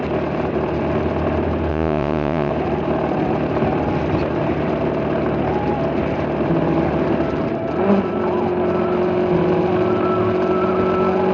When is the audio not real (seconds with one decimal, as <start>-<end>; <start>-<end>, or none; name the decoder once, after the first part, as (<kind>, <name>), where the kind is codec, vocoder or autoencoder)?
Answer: 1.7-2.5 (vocoder, WaveNeXt)